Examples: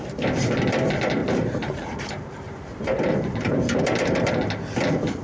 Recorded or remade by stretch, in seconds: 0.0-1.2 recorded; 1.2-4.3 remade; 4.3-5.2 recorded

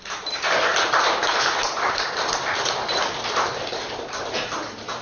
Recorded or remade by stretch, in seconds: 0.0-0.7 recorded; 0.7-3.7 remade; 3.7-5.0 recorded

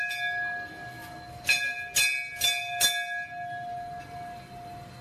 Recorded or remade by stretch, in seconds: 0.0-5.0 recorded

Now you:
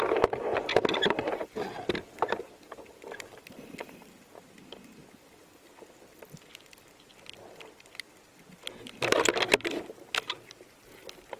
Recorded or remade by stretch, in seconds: 0.0-1.4 recorded; 1.4-3.4 remade; 3.4-3.8 recorded; 3.8-4.4 remade; 4.4-11.4 recorded